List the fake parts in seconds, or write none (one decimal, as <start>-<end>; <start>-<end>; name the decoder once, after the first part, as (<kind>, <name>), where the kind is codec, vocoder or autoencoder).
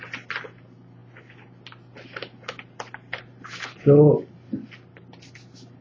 none